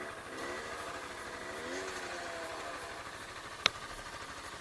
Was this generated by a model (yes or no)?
no